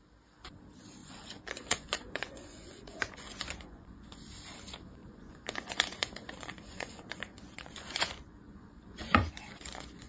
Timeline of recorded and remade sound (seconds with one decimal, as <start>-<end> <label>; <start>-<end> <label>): 0.0-1.0 recorded; 1.0-4.2 remade; 4.2-5.0 recorded; 5.0-10.1 remade